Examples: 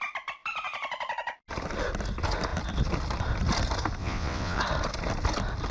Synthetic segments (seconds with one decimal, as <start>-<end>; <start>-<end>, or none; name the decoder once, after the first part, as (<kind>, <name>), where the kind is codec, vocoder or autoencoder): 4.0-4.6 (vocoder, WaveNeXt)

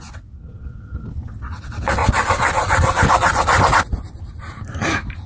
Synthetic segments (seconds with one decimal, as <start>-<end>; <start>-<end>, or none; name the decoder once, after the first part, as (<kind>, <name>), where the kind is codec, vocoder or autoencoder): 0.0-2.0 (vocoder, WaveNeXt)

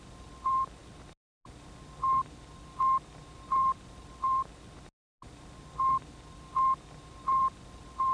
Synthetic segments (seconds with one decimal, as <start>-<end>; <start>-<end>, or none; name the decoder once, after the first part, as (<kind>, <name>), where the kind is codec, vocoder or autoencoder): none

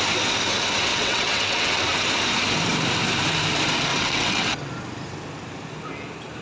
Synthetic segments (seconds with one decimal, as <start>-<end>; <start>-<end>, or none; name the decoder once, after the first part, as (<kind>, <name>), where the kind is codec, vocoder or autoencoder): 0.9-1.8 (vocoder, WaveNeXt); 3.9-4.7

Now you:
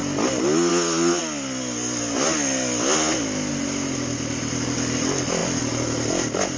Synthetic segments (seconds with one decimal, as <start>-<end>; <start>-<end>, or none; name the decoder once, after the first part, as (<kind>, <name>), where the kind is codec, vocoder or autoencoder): none

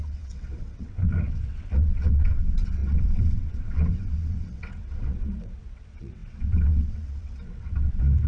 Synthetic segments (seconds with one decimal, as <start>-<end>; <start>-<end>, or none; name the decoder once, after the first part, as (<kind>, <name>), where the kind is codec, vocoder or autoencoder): 0.0-8.3 (vocoder, WaveNeXt)